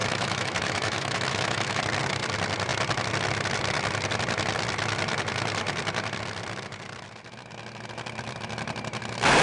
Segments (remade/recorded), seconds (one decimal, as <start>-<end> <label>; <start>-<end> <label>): 0.0-1.8 remade; 1.8-9.4 recorded